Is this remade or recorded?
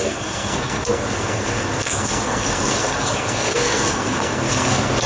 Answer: remade